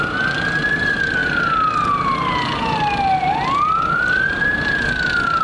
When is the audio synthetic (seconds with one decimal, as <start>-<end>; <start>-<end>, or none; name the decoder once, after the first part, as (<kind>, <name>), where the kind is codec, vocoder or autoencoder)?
none